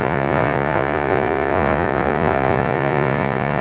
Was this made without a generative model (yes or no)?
no